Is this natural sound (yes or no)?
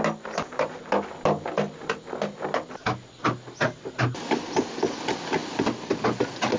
yes